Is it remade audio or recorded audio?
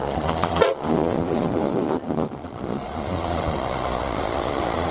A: remade